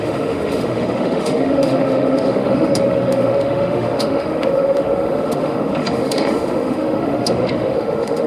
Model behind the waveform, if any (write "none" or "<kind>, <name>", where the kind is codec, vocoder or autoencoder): autoencoder, DAC-VAE